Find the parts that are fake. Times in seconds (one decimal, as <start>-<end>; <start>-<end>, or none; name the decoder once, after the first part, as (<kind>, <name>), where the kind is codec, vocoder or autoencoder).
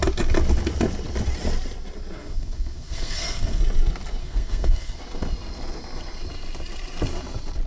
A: 2.2-3.6 (codec, SNAC); 4.2-5.0